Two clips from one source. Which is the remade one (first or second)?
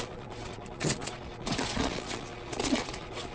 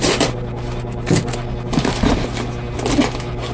first